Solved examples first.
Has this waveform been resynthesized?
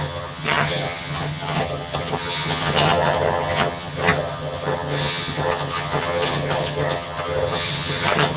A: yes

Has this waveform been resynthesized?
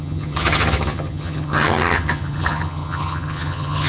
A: yes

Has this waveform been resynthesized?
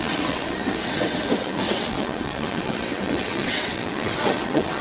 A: yes